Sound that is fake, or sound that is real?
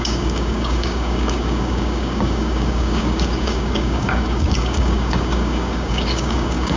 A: fake